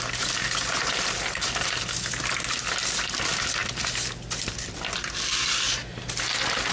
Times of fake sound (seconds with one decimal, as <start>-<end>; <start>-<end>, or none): none

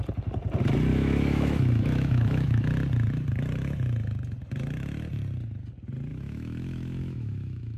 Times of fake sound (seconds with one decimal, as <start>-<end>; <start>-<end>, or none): 0.9-2.7; 6.1-7.8

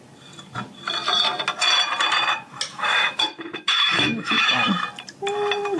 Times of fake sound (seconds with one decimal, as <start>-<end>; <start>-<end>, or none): 2.7-4.7

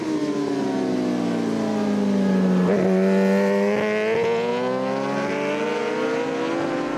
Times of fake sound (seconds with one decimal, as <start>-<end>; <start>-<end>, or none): none

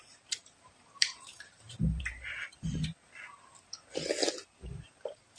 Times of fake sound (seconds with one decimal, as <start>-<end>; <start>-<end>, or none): 0.0-1.8; 5.0-5.4

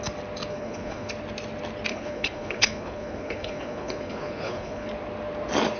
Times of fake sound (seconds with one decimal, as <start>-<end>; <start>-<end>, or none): 0.5-1.1; 1.9-4.9

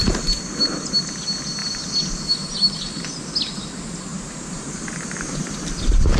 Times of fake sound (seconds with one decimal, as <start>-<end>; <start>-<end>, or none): 4.1-5.5